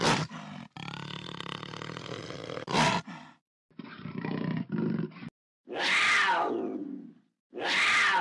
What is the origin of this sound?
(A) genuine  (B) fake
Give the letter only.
A